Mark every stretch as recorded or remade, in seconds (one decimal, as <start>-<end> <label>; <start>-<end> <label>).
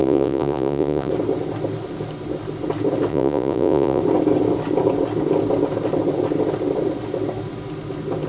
0.0-1.1 remade; 1.1-3.1 recorded; 3.1-4.0 remade; 4.0-8.3 recorded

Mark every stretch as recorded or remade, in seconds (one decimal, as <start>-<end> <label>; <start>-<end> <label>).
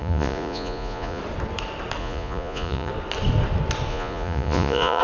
0.0-1.2 remade; 1.2-2.0 recorded; 2.0-2.9 remade; 2.9-3.9 recorded; 3.9-5.0 remade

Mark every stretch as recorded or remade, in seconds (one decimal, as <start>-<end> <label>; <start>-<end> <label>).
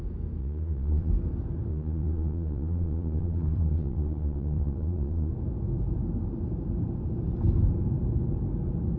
0.0-0.4 recorded; 0.4-1.1 remade; 1.1-1.7 recorded; 1.7-5.3 remade; 5.3-9.0 recorded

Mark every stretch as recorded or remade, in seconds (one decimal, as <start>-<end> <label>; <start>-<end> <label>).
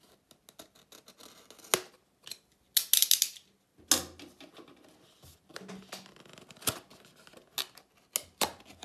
0.0-8.8 recorded